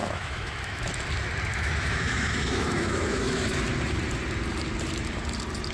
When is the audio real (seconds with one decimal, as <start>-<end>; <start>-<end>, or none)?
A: 0.9-1.5; 3.7-5.7